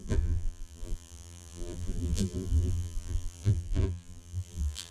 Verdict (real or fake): fake